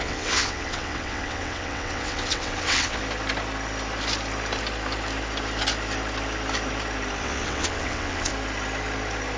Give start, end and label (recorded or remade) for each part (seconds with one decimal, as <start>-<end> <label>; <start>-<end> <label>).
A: 0.0-3.0 remade; 3.0-7.2 recorded; 7.2-8.3 remade; 8.3-9.4 recorded